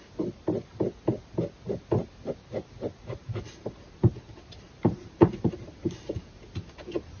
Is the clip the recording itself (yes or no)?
yes